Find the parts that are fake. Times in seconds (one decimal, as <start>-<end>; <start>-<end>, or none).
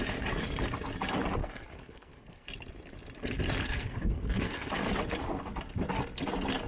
1.4-2.5; 3.6-4.9